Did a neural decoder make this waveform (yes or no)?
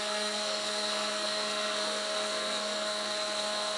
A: yes